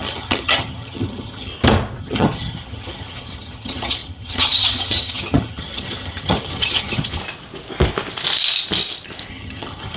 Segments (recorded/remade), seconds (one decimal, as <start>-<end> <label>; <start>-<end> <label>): 0.0-1.5 remade; 1.5-2.0 recorded; 2.0-7.2 remade; 7.2-9.3 recorded; 9.3-10.0 remade